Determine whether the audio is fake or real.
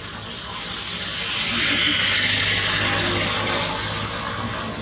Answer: real